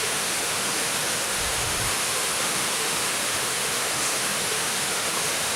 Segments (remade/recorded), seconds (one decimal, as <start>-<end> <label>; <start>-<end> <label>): 0.0-5.6 remade